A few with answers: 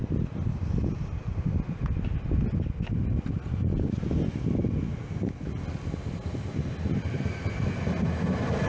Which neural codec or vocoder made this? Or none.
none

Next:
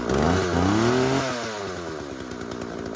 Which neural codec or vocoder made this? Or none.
none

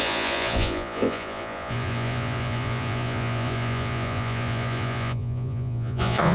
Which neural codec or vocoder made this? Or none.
vocoder, Vocos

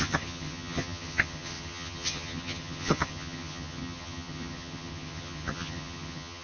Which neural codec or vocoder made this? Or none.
vocoder, HiFi-GAN